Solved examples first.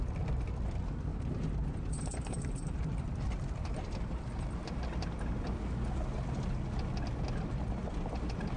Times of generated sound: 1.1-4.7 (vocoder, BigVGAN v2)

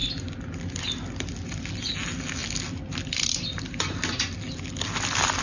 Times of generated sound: none

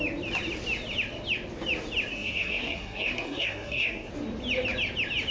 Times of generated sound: 2.1-4.1 (codec, SNAC)